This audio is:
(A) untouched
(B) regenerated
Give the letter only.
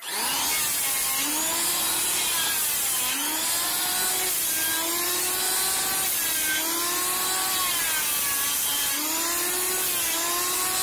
A